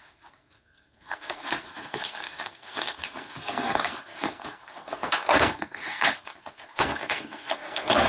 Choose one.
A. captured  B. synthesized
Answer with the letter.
B